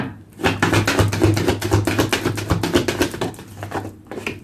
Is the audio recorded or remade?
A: recorded